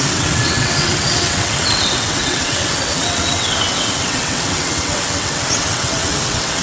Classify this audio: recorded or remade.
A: remade